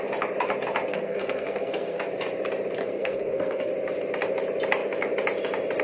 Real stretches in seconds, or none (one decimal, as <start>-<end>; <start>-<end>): 0.0-0.9; 2.0-2.8; 3.7-5.8